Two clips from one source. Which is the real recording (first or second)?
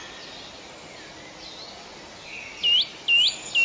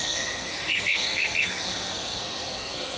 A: first